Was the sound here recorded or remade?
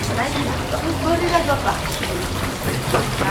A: recorded